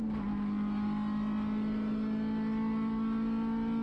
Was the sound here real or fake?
real